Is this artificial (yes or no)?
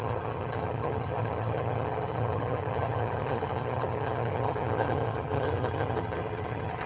yes